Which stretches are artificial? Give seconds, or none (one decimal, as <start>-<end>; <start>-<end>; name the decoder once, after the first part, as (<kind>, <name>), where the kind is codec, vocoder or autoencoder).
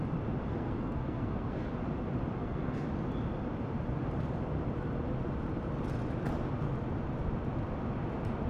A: 0.5-1.7 (codec, SNAC); 2.4-2.9